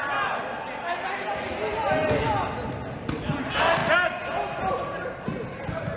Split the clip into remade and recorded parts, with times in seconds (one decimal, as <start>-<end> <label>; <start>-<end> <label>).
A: 0.0-6.0 recorded